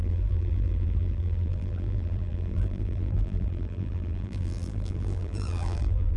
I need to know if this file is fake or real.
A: fake